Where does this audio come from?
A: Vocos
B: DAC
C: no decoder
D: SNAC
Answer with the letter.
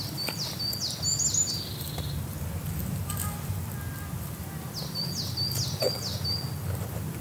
C